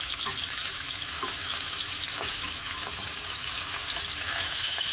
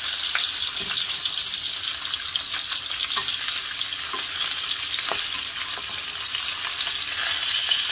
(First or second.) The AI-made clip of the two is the first